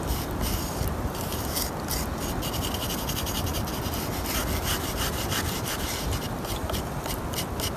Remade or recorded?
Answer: recorded